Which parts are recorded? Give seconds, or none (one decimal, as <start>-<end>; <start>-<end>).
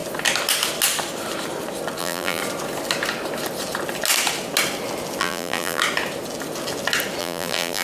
0.0-2.0; 2.4-5.2; 5.8-7.2